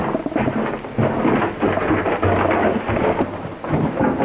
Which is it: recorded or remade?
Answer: recorded